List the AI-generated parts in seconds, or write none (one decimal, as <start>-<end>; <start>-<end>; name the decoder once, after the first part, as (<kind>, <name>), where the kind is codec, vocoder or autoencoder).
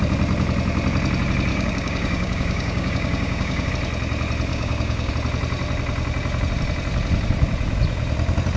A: 1.5-3.7 (codec, DAC); 4.5-5.1